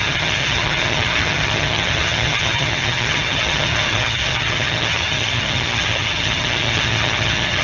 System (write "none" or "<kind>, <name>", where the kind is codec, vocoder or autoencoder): vocoder, HiFi-GAN